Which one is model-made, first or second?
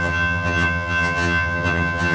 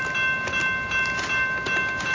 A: first